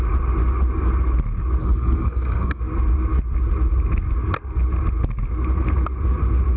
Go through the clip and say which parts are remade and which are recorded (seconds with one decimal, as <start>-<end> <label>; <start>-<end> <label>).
0.0-1.6 recorded; 1.6-2.6 remade; 2.6-6.6 recorded